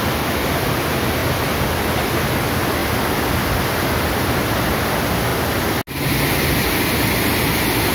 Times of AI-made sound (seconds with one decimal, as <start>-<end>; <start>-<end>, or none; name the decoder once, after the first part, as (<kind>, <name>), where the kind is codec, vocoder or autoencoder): none